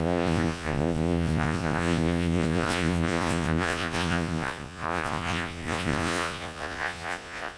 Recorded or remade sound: remade